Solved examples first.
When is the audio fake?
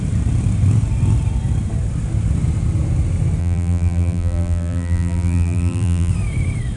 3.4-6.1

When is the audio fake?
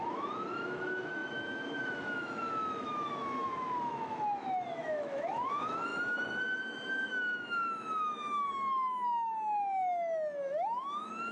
0.0-11.3